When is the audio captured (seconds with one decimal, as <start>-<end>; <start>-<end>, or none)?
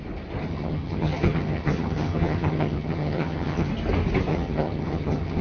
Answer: 0.0-0.5; 3.7-4.3